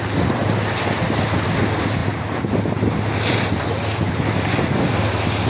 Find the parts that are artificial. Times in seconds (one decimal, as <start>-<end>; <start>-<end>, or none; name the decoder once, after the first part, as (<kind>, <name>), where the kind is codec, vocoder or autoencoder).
none